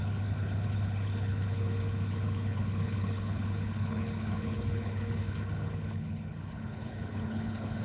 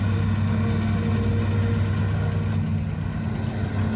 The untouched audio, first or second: second